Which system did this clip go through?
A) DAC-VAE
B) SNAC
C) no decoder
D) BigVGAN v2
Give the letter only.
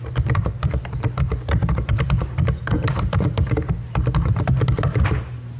D